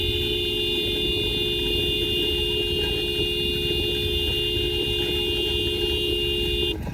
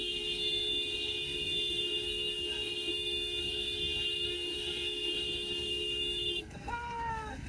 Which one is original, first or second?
first